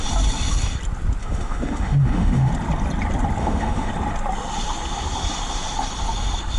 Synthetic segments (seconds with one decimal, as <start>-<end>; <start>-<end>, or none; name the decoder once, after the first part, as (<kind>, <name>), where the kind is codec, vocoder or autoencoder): 1.2-2.5 (autoencoder, DAC-VAE); 3.4-3.9